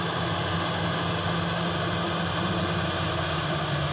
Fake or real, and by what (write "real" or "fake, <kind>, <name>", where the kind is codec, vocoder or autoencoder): real